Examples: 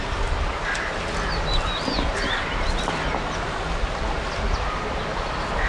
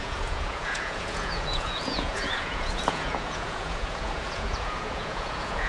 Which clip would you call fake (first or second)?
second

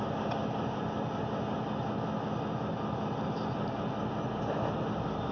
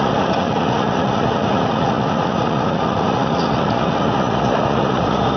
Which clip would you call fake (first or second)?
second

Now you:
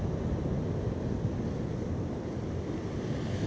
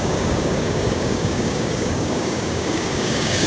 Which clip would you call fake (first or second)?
second